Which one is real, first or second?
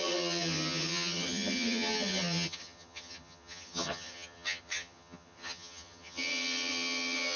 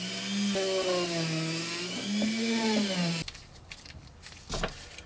second